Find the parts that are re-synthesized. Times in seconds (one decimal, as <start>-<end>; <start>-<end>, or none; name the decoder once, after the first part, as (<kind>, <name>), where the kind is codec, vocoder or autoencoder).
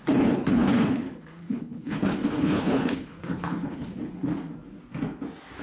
0.0-4.3 (codec, HILCodec)